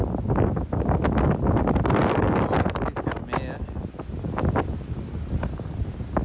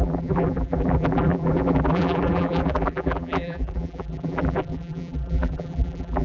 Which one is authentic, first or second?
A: first